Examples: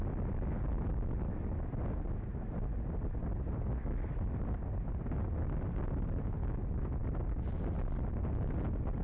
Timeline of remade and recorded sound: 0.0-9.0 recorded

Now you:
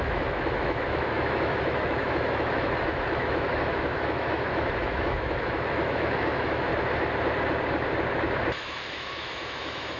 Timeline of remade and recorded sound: 0.0-6.7 remade; 6.7-8.5 recorded; 8.5-10.0 remade

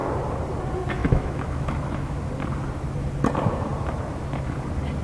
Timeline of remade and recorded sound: 0.0-1.0 recorded; 1.0-2.3 remade; 2.3-5.0 recorded

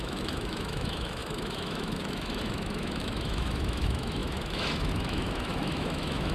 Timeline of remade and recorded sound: 0.0-6.3 remade

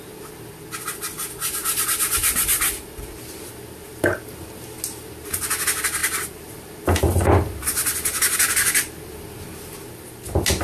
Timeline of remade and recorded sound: 0.0-10.6 recorded